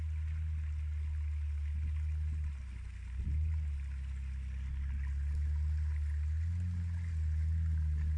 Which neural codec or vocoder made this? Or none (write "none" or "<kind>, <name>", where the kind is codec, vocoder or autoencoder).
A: none